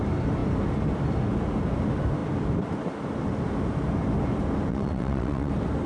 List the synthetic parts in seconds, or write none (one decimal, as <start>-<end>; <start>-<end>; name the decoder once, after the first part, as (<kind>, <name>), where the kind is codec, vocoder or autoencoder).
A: 4.7-5.5 (vocoder, WaveNeXt)